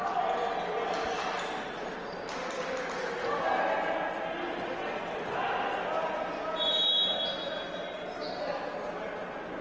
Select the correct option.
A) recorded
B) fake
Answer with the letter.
A